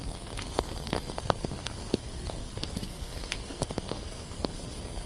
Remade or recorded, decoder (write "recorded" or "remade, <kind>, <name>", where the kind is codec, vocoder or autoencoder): remade, codec, SNAC